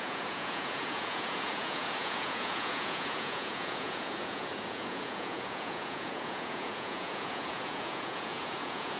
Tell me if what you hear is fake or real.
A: fake